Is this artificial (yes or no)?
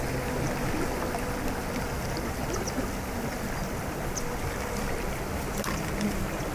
no